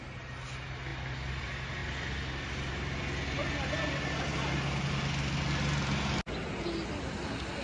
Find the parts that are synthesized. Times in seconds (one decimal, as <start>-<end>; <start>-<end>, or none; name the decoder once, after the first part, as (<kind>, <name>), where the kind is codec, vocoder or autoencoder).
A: 1.8-2.5 (vocoder, BigVGAN v2)